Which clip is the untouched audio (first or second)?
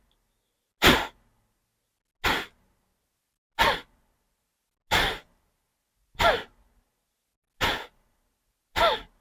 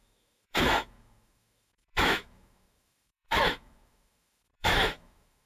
first